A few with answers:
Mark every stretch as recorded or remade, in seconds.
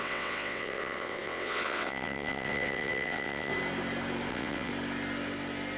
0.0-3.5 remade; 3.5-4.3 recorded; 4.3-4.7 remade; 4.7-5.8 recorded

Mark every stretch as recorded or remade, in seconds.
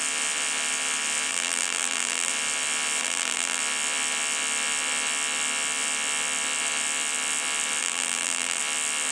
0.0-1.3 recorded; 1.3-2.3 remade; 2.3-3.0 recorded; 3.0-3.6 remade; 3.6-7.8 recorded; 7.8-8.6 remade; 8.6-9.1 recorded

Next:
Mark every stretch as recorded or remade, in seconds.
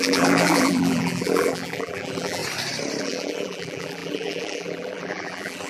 0.0-2.4 remade; 2.4-3.0 recorded; 3.0-5.7 remade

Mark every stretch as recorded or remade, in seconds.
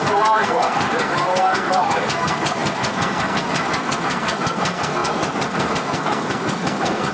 0.0-7.1 remade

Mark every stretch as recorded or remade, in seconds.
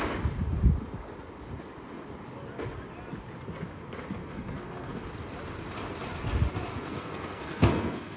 0.0-4.2 recorded; 4.2-5.0 remade; 5.0-6.7 recorded; 6.7-8.2 remade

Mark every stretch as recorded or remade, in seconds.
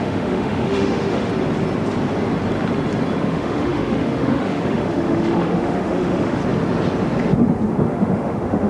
0.0-1.3 remade; 1.3-3.2 recorded; 3.2-6.4 remade; 6.4-7.7 recorded; 7.7-8.7 remade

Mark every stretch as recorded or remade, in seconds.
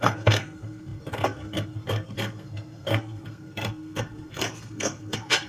0.0-5.5 remade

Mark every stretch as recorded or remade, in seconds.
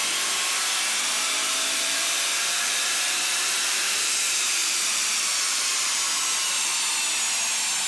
0.0-6.7 remade; 6.7-7.9 recorded